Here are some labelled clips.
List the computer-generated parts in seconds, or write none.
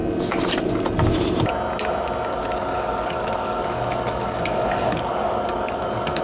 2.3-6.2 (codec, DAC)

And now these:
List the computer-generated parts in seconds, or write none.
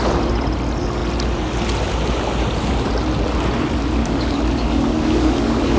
4.0-5.8 (codec, DAC)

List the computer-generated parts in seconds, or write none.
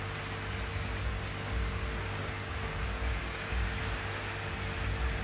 0.7-3.8 (codec, DAC)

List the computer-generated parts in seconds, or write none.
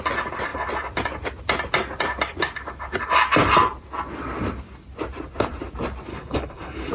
6.1-6.9 (codec, DAC)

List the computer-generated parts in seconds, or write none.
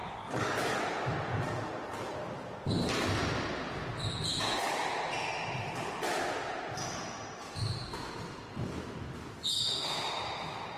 0.0-0.8 (codec, DAC)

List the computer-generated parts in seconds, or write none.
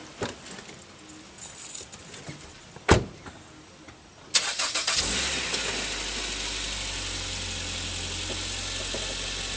none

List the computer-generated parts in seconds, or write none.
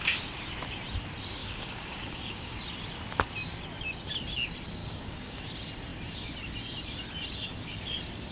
1.4-2.6 (codec, DAC); 4.8-5.4